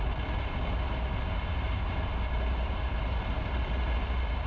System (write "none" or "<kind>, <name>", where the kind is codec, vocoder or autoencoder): none